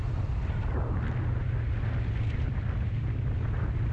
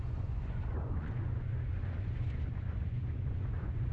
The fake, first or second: second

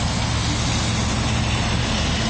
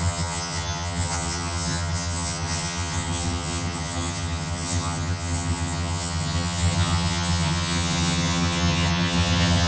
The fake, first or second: second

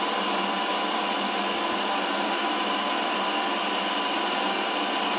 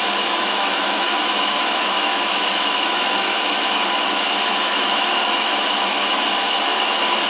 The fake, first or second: second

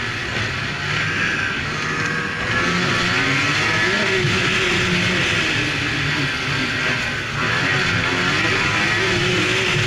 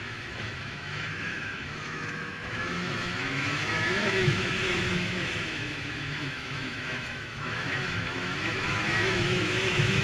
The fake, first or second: second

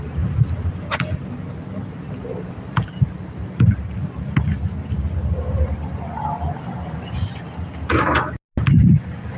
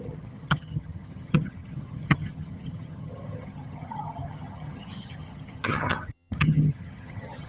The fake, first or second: second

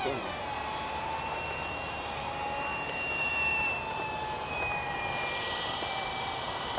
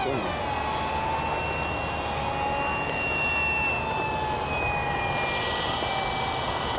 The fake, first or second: first